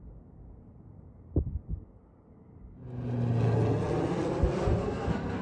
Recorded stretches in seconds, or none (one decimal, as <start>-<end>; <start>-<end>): 0.0-4.8